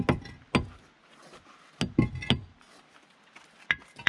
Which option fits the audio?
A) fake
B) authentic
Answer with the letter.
B